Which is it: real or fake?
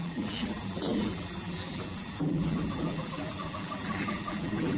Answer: fake